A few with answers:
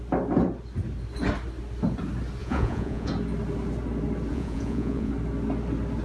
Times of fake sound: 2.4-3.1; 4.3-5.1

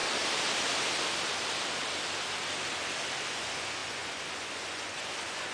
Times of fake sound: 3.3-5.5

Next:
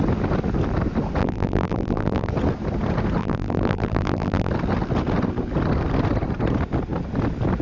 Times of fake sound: 1.2-2.3; 3.2-4.5

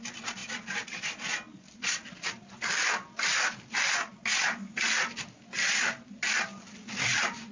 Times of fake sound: 0.0-7.5